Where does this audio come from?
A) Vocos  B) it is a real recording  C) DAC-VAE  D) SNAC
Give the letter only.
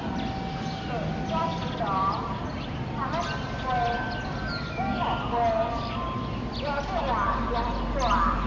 B